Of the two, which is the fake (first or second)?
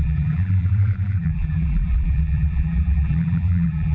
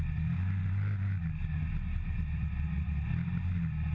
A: first